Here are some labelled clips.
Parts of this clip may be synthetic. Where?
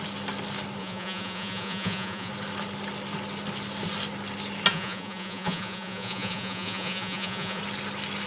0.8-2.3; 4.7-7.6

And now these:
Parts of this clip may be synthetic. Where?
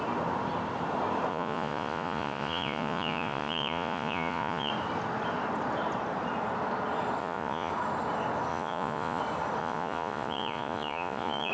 1.3-4.7; 7.2-7.7; 8.5-9.2; 9.6-11.5